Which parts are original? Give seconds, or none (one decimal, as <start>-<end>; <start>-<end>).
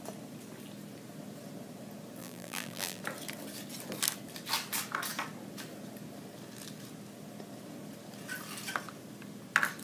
0.0-2.2; 3.0-9.8